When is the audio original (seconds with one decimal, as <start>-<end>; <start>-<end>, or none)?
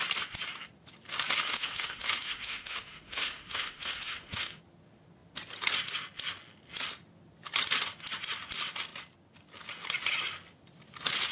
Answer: 0.0-1.5; 4.6-11.3